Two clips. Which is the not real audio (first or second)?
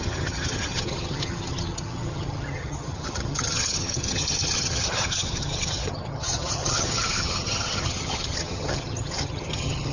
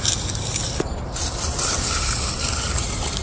first